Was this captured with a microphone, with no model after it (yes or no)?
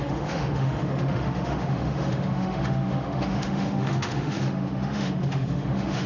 no